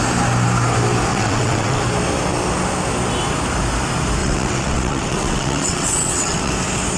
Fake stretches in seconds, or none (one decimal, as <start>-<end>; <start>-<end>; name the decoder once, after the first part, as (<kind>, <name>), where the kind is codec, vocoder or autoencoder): 1.1-1.8 (vocoder, WaveNeXt); 4.2-6.5